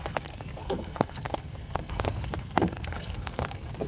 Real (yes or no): no